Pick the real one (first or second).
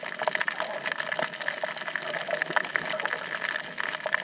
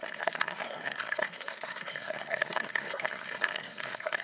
first